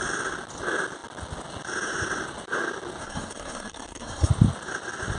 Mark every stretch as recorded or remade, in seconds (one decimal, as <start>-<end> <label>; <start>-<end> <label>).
0.0-3.0 recorded; 3.0-4.3 remade; 4.3-5.2 recorded